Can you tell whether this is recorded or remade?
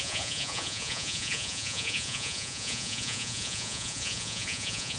remade